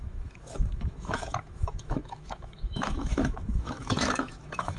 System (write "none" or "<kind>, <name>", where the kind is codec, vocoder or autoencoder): autoencoder, DAC-VAE